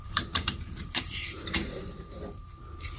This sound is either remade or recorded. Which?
remade